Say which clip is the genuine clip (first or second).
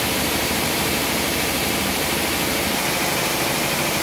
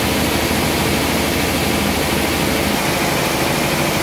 second